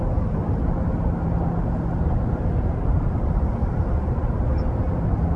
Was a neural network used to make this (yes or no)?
no